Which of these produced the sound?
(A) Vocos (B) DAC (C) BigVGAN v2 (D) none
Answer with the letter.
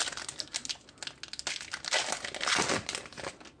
D